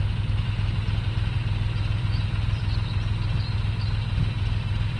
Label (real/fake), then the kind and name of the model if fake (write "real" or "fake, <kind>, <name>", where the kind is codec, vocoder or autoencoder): real